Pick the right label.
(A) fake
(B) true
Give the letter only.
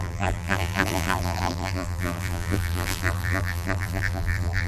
A